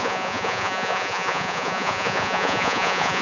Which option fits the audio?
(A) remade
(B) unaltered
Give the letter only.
A